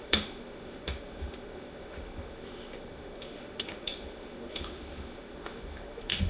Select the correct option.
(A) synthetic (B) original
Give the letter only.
A